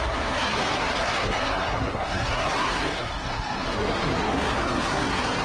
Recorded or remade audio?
remade